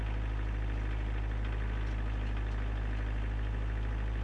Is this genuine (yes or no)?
yes